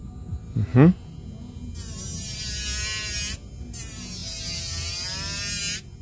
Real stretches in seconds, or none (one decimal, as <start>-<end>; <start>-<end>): 0.0-6.0